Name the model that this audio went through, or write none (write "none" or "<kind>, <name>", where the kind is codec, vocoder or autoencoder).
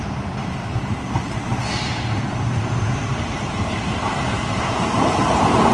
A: vocoder, BigVGAN v2